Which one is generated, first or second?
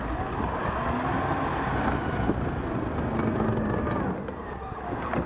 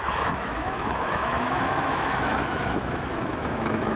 second